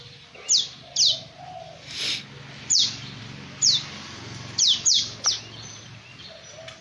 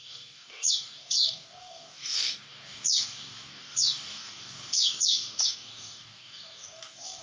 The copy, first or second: second